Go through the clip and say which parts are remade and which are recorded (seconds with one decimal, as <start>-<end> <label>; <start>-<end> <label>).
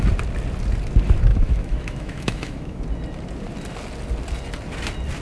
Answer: 0.0-1.3 recorded; 1.3-2.8 remade; 2.8-5.2 recorded